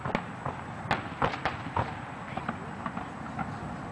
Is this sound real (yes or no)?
yes